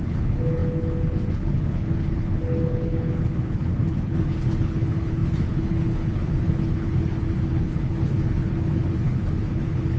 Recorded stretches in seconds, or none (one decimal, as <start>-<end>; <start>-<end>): none